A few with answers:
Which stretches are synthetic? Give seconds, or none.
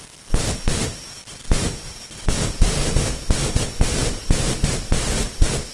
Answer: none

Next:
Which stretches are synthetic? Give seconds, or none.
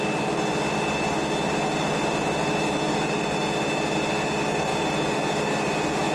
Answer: 4.7-5.3 (vocoder, BigVGAN v2)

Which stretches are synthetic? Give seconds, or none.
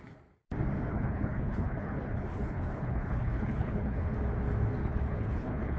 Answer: 0.9-4.1 (codec, HILCodec); 4.8-5.8